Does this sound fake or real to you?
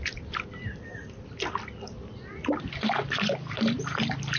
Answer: real